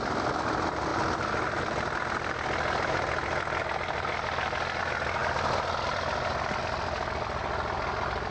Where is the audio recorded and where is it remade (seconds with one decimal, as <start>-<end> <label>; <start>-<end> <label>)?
0.0-8.3 recorded